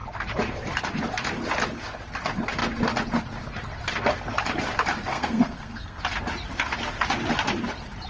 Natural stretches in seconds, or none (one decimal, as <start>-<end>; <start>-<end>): 0.0-5.1; 6.0-8.1